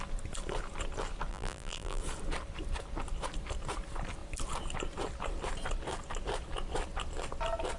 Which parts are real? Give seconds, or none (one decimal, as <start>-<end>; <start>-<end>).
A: 0.0-1.3; 2.0-7.8